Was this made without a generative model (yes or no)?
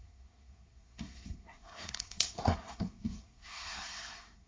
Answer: no